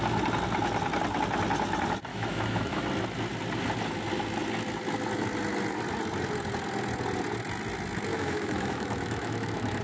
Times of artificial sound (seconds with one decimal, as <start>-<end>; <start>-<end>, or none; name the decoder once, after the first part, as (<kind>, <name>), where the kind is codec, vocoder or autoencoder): 2.1-2.8 (autoencoder, DAC-VAE); 8.1-9.8